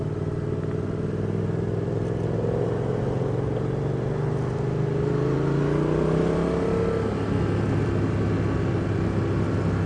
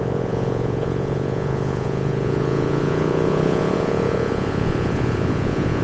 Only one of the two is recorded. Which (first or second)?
first